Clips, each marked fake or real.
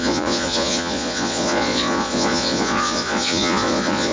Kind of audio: fake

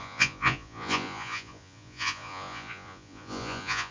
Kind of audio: fake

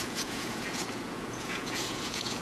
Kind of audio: fake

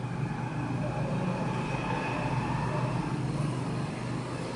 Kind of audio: real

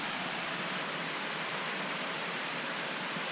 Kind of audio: real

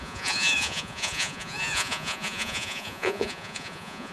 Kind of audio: fake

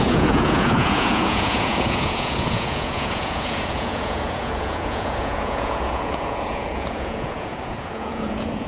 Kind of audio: fake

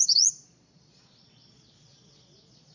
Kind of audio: fake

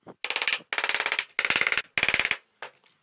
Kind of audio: real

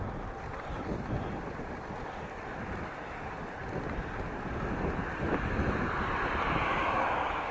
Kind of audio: real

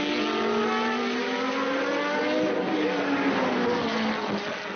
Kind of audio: real